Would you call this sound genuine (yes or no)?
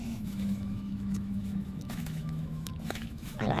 no